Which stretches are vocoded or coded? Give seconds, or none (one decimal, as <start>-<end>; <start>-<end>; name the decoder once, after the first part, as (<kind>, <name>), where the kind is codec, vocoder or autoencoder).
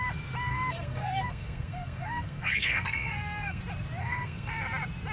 0.5-3.6 (codec, SNAC); 4.0-4.5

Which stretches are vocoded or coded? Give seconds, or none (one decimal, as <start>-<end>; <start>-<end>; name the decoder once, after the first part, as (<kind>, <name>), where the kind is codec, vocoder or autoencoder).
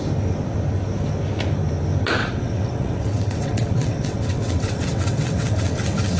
2.2-6.2 (vocoder, WaveNeXt)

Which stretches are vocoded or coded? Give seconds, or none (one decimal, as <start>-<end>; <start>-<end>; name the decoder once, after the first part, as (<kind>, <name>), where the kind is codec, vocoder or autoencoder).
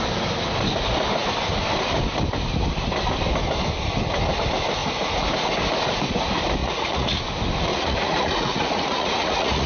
6.6-7.2 (vocoder, Vocos); 7.7-9.7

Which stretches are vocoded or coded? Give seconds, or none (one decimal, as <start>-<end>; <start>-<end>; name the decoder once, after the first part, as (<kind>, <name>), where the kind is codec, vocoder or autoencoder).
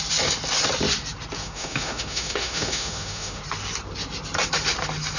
1.4-3.4 (autoencoder, DAC-VAE)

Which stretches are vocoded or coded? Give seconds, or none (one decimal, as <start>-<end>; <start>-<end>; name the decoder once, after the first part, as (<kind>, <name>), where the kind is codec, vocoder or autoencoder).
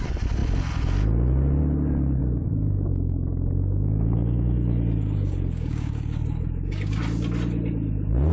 2.2-7.0 (codec, DAC)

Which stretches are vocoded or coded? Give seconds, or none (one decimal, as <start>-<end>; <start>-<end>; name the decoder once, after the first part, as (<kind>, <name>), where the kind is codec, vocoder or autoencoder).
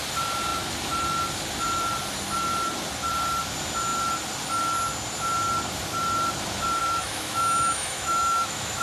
6.8-8.8 (autoencoder, DAC-VAE)